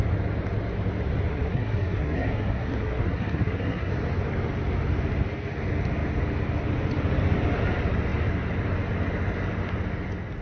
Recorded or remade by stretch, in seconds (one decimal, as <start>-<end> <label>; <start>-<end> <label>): 0.0-1.3 recorded; 1.3-3.9 remade; 3.9-10.4 recorded